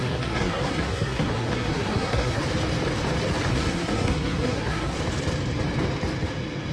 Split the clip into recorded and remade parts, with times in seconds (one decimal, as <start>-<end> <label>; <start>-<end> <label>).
0.0-2.4 remade; 2.4-3.5 recorded; 3.5-5.0 remade; 5.0-6.7 recorded